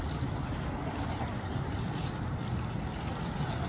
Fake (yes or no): no